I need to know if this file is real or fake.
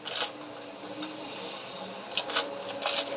real